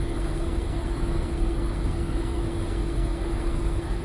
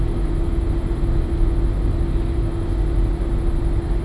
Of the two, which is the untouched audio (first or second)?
second